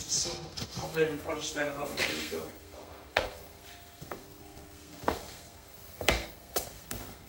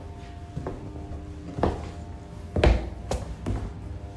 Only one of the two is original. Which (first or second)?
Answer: second